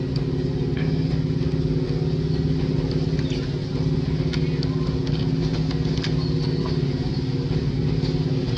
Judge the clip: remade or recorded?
recorded